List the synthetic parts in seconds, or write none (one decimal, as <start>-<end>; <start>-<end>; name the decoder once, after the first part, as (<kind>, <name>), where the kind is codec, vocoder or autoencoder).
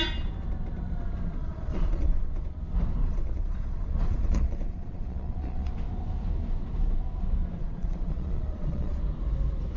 1.4-2.3 (vocoder, Vocos); 3.0-5.7; 7.6-9.0